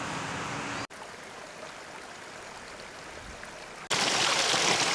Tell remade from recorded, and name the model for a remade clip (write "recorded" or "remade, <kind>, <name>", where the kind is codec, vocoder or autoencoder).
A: recorded